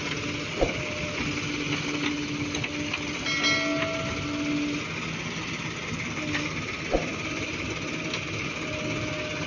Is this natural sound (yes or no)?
yes